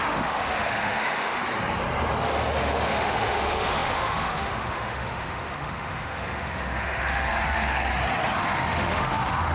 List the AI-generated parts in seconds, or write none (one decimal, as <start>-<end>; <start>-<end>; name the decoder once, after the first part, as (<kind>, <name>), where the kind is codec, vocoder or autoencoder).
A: 0.0-1.4 (autoencoder, DAC-VAE); 2.6-7.9; 8.4-9.5